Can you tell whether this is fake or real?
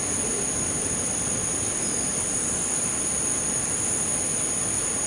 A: real